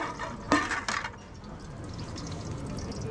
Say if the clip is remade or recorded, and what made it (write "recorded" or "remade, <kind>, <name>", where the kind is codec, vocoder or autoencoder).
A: recorded